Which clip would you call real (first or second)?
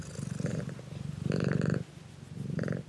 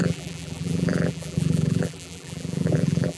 first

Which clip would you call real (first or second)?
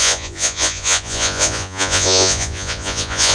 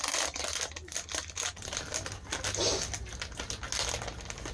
second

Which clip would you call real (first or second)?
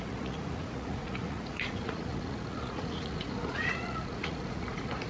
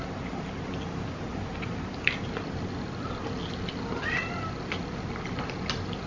second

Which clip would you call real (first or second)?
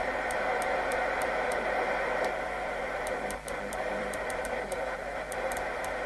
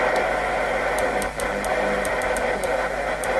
second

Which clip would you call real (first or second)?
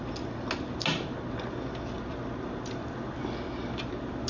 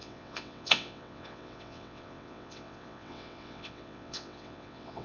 first